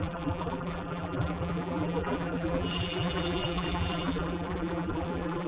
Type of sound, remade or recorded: remade